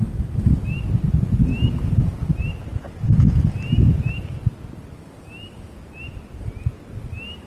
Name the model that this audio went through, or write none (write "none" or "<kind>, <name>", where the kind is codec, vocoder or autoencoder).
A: none